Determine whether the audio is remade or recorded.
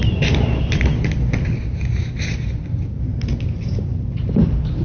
recorded